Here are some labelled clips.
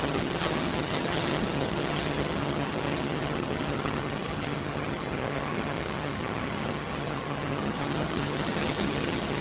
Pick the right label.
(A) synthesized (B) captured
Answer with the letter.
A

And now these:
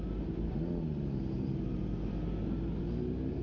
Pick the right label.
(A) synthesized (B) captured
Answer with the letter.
B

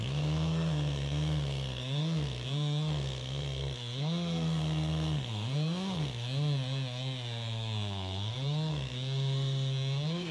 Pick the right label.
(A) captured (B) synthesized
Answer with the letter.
B